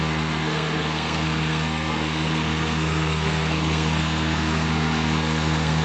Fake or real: fake